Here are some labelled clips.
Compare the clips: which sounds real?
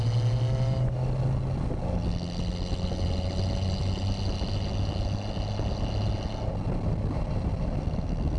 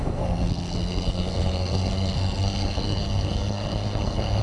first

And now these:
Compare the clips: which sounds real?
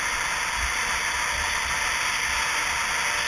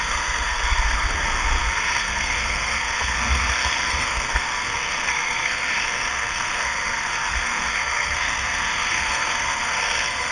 first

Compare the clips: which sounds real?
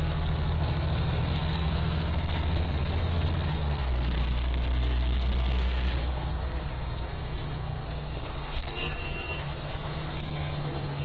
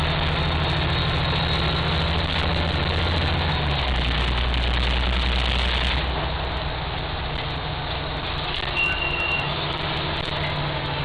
second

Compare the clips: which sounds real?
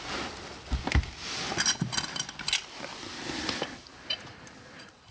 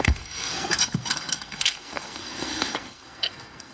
first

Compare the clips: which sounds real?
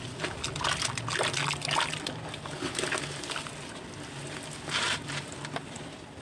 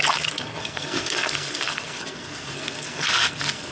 first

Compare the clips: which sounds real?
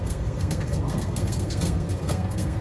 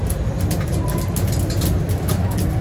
second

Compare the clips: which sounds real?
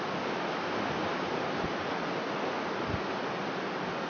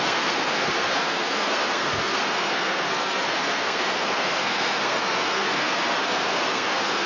first